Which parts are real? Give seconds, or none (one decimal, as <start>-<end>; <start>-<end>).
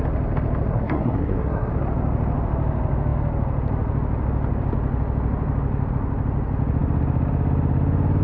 0.0-0.7; 1.7-8.2